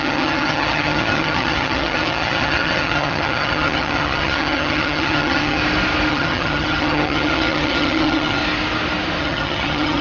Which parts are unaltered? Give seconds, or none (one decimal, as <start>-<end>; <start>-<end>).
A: 5.6-6.1; 8.4-9.2